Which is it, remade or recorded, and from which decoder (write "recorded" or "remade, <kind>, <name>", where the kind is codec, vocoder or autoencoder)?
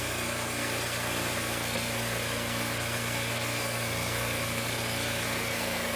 remade, codec, SNAC